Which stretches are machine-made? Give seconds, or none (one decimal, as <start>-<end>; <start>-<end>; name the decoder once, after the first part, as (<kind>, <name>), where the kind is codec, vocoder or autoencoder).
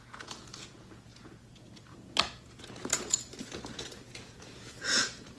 0.0-5.4 (vocoder, Vocos)